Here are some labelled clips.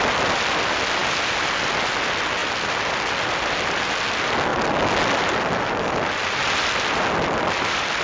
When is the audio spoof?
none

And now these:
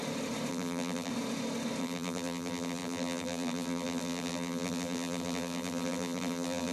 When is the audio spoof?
0.5-1.1; 1.8-6.7